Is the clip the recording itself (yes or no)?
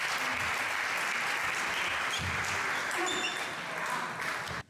yes